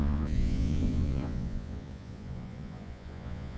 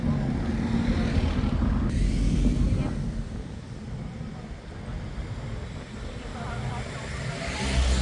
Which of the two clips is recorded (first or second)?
second